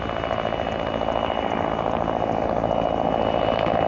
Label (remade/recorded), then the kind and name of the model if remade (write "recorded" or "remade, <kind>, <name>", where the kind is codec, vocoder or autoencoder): recorded